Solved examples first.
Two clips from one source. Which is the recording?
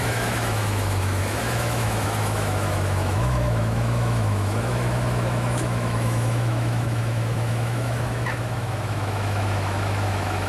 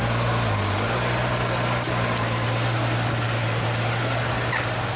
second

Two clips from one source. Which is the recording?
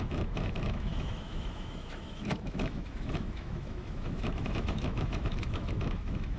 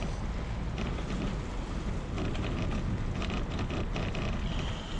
second